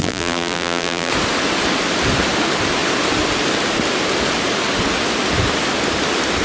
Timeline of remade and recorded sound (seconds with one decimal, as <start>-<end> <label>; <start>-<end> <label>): 0.0-1.1 remade; 1.1-6.4 recorded